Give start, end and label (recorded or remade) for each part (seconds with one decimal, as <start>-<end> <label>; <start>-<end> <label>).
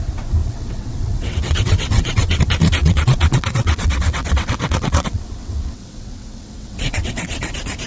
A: 0.0-0.4 recorded; 0.4-2.4 remade; 2.4-2.8 recorded; 2.8-7.5 remade; 7.5-7.9 recorded